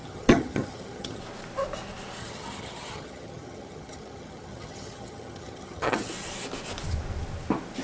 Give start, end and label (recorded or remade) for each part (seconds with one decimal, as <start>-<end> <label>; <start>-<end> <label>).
0.0-1.2 remade; 1.2-2.2 recorded; 2.2-6.1 remade; 6.1-7.8 recorded